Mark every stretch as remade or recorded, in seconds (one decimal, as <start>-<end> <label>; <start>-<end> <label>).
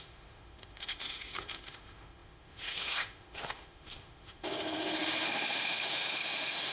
0.0-6.7 remade